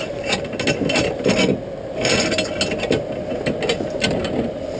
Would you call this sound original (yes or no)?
yes